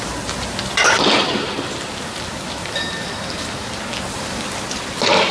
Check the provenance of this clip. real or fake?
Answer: real